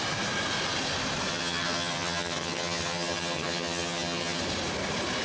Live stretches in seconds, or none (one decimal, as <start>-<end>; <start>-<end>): 0.0-1.3; 4.4-5.2

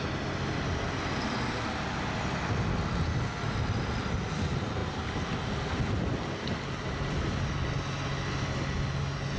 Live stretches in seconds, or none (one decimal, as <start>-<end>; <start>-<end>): 0.0-9.4

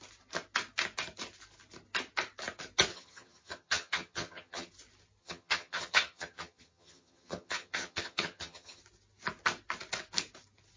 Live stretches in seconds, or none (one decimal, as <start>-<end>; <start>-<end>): 0.0-2.9; 4.7-5.2; 8.8-10.8

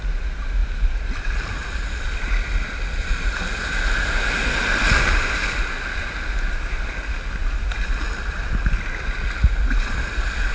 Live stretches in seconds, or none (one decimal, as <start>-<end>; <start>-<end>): 0.0-10.5

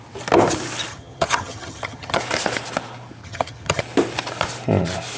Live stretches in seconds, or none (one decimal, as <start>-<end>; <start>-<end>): 0.0-0.9; 2.2-3.2; 3.8-5.2